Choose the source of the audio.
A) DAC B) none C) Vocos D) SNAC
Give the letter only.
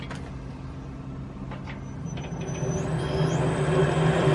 B